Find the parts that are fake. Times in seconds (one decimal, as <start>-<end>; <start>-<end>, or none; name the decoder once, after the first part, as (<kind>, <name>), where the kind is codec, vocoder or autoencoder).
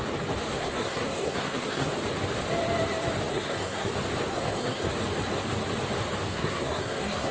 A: 0.6-1.9 (codec, SNAC); 3.3-3.9; 4.3-4.9; 6.3-7.3